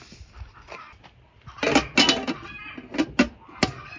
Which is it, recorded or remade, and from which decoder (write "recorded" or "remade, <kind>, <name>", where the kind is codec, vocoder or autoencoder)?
recorded